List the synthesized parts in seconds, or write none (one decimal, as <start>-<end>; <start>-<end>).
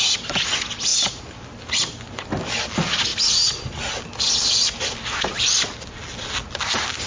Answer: none